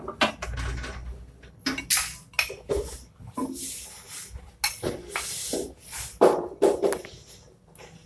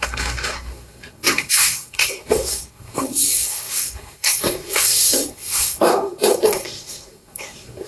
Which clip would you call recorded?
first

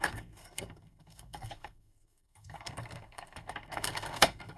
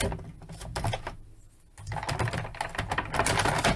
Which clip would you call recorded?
second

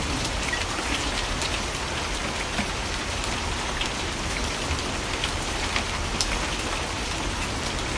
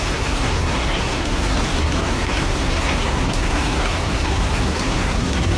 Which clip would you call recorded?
first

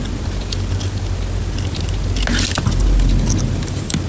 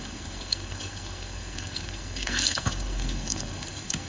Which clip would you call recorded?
first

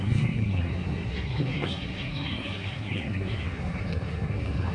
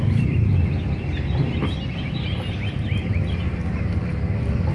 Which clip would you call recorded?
second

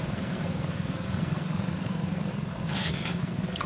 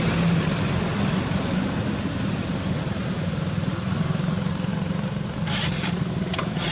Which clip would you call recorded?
second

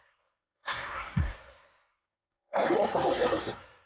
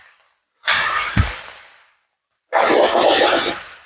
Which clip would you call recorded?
second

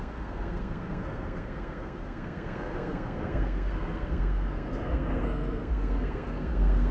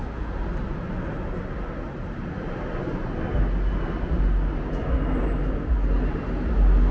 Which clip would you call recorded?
second